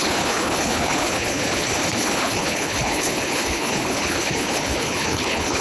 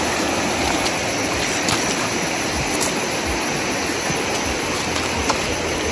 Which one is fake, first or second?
first